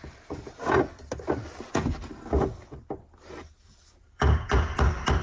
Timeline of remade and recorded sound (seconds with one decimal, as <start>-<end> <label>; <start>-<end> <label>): 0.0-3.6 recorded; 3.6-4.7 remade; 4.7-5.2 recorded